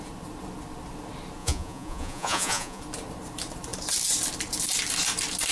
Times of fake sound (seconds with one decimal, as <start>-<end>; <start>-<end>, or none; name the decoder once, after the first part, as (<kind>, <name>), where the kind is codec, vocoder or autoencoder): 1.4-2.8 (vocoder, Vocos)

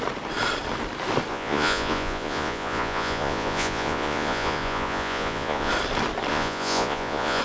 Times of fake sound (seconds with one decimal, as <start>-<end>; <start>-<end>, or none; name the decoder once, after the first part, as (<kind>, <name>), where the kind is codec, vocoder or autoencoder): 1.3-5.7 (vocoder, Vocos); 6.3-7.4

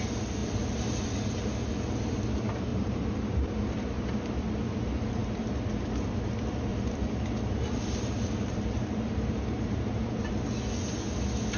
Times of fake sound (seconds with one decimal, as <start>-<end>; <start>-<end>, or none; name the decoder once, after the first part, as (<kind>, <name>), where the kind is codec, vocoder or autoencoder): 0.4-1.7 (vocoder, BigVGAN v2); 2.7-4.0; 6.7-10.3

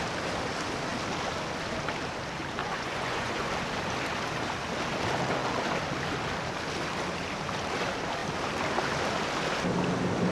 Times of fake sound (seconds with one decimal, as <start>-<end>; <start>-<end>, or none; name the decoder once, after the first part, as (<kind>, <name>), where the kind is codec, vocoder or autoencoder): 2.6-3.5 (vocoder, Vocos)

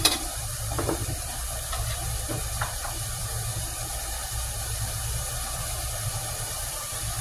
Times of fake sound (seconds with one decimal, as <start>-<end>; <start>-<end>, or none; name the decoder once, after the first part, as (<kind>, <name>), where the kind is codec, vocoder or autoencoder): 0.0-7.2 (vocoder, BigVGAN v2)

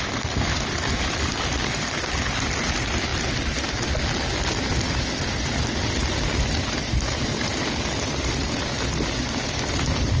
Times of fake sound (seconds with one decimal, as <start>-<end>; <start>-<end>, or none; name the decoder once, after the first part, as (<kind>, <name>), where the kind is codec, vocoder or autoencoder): none

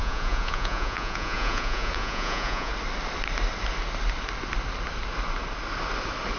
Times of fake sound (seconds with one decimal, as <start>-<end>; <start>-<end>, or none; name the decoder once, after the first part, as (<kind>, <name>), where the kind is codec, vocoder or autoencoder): 0.0-2.7 (vocoder, Vocos)